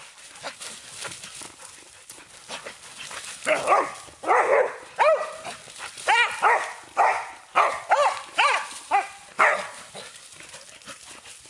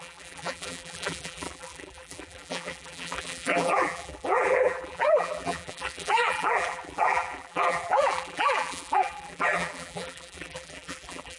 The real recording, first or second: first